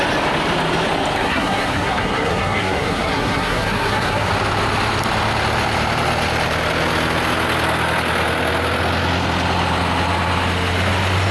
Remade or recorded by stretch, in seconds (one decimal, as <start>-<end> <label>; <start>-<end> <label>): 0.0-1.2 recorded; 1.2-4.3 remade; 4.3-11.3 recorded